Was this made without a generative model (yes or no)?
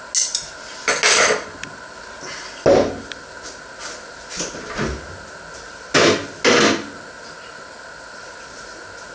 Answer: yes